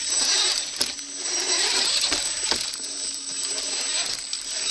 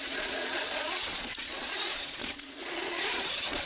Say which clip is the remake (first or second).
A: second